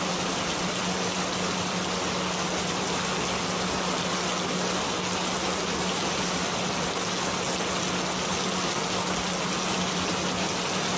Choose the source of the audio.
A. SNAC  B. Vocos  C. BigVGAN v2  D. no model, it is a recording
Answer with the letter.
D